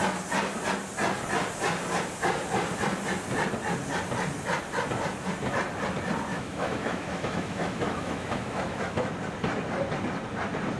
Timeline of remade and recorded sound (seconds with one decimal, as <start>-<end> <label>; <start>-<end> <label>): 0.0-6.3 recorded; 6.3-9.1 remade; 9.1-10.8 recorded